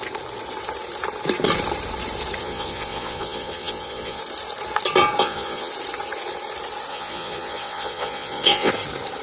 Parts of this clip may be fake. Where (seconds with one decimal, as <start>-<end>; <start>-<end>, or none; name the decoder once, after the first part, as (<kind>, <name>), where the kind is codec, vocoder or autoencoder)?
2.4-4.2 (vocoder, Vocos); 5.2-5.7; 6.9-8.7